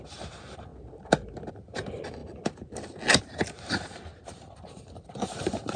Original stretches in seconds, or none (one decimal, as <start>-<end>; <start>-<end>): 0.7-1.5; 2.2-3.2